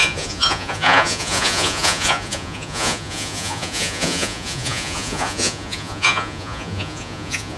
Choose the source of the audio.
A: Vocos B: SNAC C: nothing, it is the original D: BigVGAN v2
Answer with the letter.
A